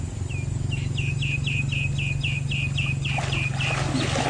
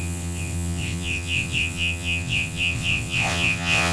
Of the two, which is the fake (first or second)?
second